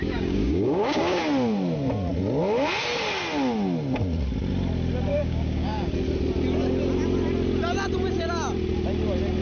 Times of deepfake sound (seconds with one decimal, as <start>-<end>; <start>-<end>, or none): 0.0-1.2; 5.1-5.9